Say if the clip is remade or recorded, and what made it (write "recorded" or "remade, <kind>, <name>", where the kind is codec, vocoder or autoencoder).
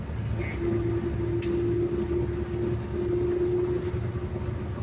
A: recorded